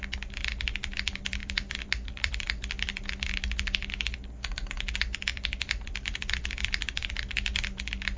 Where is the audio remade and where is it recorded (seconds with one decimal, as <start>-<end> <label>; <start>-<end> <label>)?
0.0-1.4 recorded; 1.4-2.3 remade; 2.3-5.3 recorded; 5.3-7.1 remade; 7.1-8.2 recorded